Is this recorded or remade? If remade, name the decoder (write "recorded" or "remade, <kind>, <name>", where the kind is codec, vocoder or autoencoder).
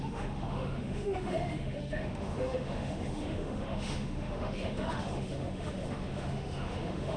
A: remade, autoencoder, DAC-VAE